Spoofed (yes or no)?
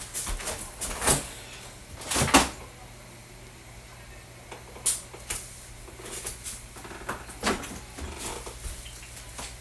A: no